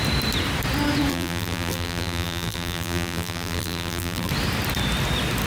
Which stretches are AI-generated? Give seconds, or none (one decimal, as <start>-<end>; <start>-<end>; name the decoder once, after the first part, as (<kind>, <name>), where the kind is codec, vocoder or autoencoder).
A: 1.1-4.3 (vocoder, BigVGAN v2)